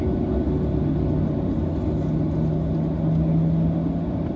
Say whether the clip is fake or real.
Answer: real